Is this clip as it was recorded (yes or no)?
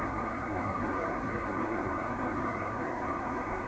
no